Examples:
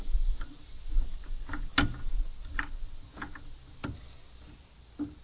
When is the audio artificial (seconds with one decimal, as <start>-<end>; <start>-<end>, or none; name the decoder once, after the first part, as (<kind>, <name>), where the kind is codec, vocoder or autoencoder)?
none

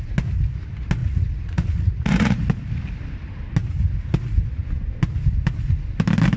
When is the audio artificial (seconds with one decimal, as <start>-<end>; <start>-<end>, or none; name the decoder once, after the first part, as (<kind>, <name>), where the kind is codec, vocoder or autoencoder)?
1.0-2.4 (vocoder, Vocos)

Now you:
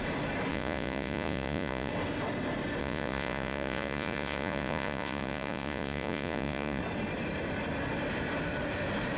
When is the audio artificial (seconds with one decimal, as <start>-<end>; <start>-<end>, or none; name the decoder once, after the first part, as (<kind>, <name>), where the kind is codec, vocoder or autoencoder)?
0.5-1.9 (vocoder, Vocos); 2.8-6.8

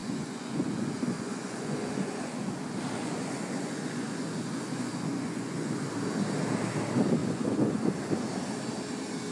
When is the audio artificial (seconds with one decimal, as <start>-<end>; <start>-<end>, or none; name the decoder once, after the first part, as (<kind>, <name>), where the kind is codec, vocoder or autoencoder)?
0.0-2.5 (vocoder, Vocos); 3.0-5.9; 7.2-8.0

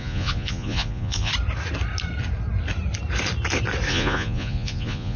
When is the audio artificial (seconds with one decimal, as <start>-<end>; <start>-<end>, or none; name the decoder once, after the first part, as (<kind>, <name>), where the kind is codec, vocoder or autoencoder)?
0.0-1.3 (vocoder, Vocos); 3.9-5.2

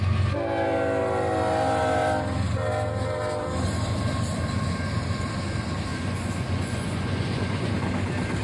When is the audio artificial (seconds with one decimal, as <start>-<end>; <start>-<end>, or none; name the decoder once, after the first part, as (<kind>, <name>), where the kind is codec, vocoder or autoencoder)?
5.9-7.7 (vocoder, Vocos)

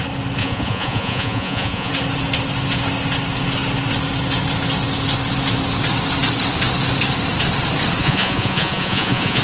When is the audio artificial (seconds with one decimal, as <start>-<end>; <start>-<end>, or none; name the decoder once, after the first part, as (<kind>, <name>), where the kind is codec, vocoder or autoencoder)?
0.4-1.9 (vocoder, Vocos); 8.0-9.4

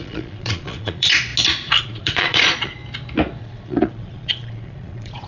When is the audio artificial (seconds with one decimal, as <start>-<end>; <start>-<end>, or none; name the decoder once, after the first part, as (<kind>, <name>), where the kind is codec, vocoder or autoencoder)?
0.0-1.3 (vocoder, Vocos); 1.8-2.8; 3.4-5.3